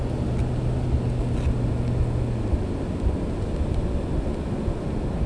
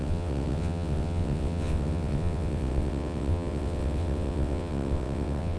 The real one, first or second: first